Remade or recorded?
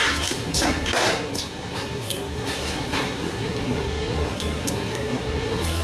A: remade